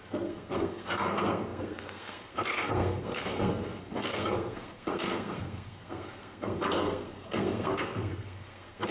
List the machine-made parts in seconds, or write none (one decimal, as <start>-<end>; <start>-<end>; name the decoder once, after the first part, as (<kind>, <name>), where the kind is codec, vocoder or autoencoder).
0.0-8.9 (codec, SNAC)